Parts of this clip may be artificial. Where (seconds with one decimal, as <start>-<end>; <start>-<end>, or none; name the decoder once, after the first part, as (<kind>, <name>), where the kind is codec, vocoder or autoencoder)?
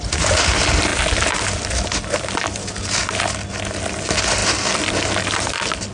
none